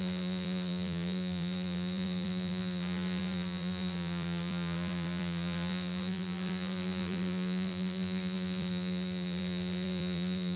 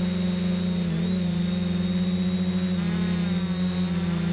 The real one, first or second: second